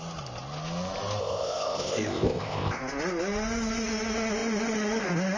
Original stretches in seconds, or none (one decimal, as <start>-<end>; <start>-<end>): 0.0-1.2; 2.8-5.4